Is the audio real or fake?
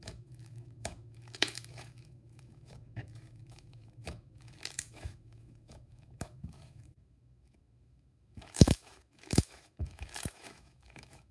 fake